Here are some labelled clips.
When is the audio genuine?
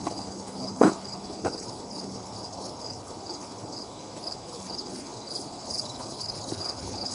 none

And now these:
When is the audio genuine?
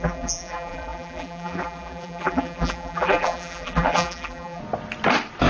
4.6-5.5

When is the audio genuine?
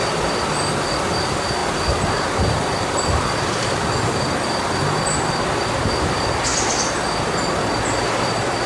0.0-8.7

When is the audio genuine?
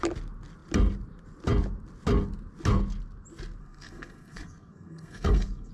0.0-3.6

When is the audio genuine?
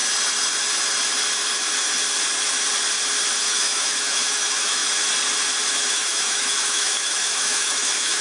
0.0-3.4; 4.8-5.7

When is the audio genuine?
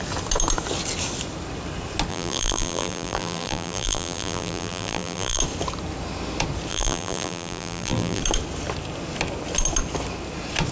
0.0-2.1; 5.4-6.7; 8.2-10.7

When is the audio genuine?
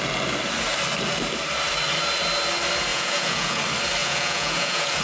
0.0-2.9; 3.6-4.0